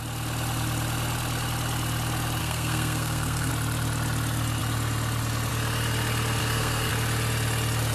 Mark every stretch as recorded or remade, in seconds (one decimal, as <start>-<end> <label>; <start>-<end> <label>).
0.0-2.4 recorded; 2.4-3.5 remade; 3.5-6.4 recorded; 6.4-6.9 remade; 6.9-7.9 recorded